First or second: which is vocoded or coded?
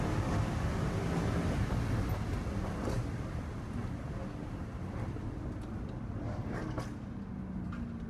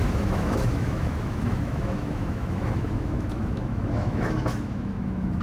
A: second